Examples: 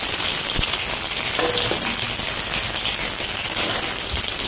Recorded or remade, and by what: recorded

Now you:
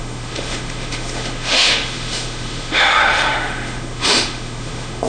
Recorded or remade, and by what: remade, autoencoder, DAC-VAE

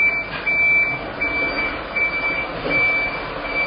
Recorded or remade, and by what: recorded